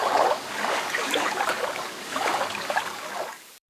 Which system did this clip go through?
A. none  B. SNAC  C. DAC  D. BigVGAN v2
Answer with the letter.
C